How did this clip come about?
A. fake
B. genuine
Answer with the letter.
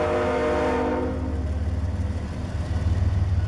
B